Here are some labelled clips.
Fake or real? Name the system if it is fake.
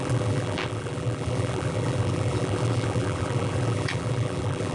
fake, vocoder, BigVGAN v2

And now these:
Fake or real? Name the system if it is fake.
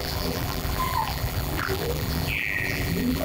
fake, vocoder, BigVGAN v2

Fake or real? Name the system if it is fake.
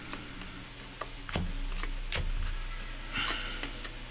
real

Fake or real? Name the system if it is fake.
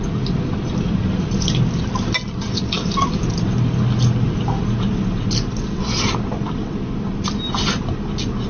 real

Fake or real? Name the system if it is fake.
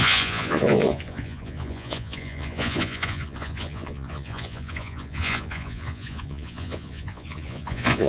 fake, vocoder, Vocos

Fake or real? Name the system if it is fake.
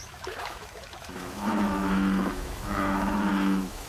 fake, autoencoder, DAC-VAE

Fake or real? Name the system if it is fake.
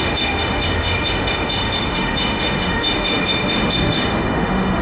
fake, autoencoder, DAC-VAE